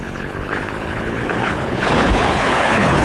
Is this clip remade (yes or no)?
yes